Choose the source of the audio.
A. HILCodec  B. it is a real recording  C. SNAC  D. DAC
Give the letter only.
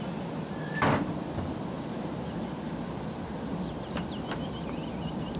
B